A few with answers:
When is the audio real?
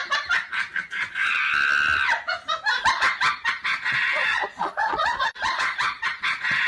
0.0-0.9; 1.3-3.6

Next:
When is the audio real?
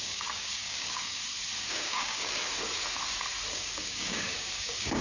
1.2-1.7; 2.5-3.5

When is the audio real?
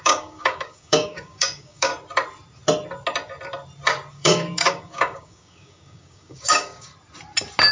1.9-4.1; 6.9-7.7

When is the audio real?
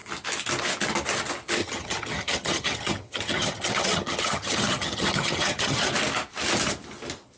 0.0-1.6; 5.9-7.4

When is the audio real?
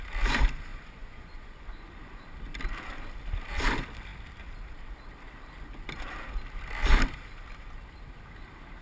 0.0-0.7; 2.2-8.8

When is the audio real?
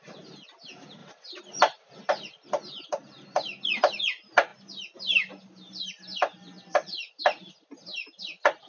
0.0-8.7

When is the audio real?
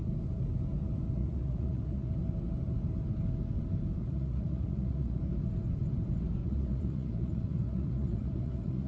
0.0-1.2; 2.1-4.0; 5.2-6.4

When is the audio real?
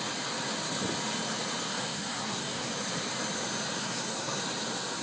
0.0-1.7; 2.7-3.8; 4.4-5.0